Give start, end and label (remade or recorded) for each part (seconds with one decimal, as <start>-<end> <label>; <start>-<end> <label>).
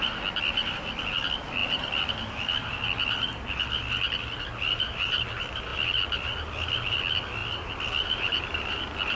0.0-1.6 recorded; 1.6-2.1 remade; 2.1-7.4 recorded; 7.4-9.2 remade